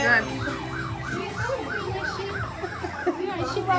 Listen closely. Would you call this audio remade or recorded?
recorded